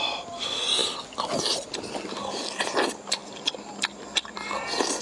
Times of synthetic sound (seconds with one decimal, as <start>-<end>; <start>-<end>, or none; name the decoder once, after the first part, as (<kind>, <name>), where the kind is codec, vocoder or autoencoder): none